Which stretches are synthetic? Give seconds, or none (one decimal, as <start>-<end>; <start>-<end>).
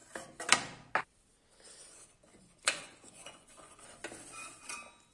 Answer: 1.8-4.0